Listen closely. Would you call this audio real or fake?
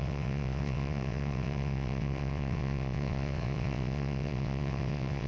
fake